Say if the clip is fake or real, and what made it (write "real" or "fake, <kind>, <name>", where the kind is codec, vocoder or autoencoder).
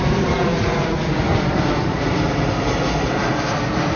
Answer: real